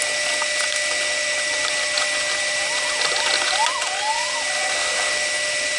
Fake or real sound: real